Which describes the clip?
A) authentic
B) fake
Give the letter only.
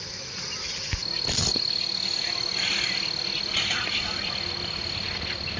A